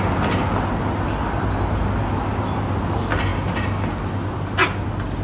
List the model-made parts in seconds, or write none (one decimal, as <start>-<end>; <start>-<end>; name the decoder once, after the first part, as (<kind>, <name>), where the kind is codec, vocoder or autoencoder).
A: none

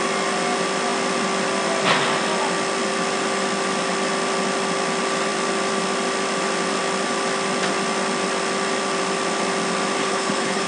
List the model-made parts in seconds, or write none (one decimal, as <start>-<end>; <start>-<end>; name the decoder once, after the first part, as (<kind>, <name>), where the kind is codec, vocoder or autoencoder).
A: 10.0-10.7 (codec, HILCodec)

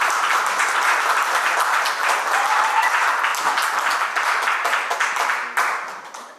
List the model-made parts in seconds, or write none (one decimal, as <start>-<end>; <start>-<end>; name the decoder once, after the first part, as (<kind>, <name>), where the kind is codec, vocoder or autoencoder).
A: none

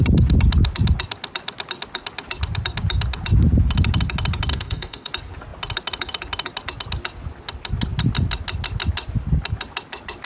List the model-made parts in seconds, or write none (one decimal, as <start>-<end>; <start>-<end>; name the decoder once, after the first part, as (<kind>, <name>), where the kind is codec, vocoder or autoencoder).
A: 4.5-5.1 (codec, DAC)

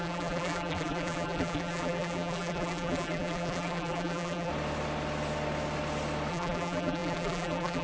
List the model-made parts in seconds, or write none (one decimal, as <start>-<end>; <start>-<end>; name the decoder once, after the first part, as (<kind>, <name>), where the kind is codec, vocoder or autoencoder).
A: 0.0-4.5 (vocoder, BigVGAN v2); 6.3-7.8

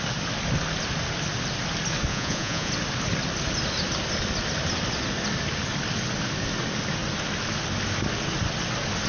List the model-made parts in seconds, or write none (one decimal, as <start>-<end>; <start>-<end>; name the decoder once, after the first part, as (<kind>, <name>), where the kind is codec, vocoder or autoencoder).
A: 2.1-2.7 (vocoder, Vocos)

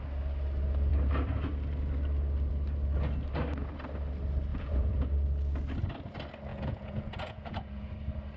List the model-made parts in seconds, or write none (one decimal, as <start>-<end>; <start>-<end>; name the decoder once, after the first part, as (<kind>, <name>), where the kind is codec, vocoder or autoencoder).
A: 4.5-5.1 (vocoder, Vocos); 6.5-7.9

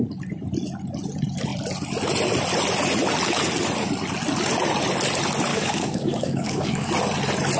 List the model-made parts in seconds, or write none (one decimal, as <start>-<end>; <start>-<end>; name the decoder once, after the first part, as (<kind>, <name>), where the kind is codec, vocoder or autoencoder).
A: 5.5-6.9 (codec, DAC)